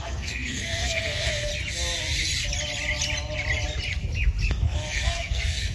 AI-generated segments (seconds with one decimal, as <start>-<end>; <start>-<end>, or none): 0.0-1.5; 4.5-5.7